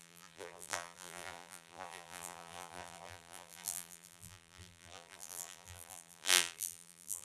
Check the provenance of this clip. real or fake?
fake